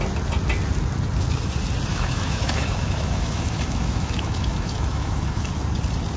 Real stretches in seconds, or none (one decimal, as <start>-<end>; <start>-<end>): 0.0-1.9; 5.5-6.2